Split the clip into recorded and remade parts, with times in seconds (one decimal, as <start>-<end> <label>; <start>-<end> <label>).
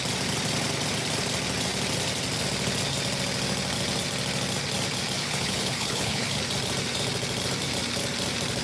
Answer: 0.0-5.2 recorded; 5.2-6.4 remade; 6.4-8.6 recorded